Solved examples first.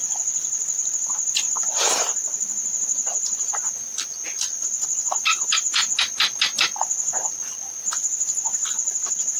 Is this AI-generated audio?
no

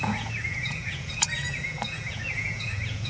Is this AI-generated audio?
yes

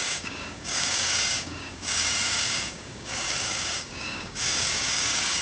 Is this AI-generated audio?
yes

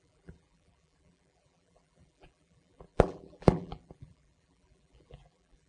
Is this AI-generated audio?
yes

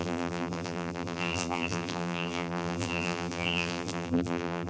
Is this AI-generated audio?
yes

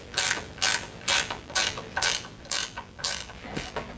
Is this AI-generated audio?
yes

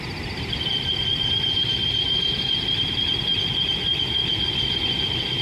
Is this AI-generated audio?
no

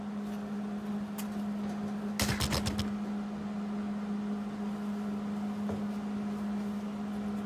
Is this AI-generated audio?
no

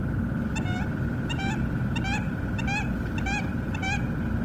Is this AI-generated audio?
no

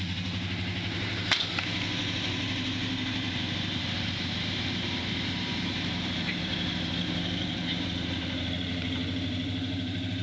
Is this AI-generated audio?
yes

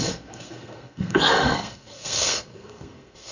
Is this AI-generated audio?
yes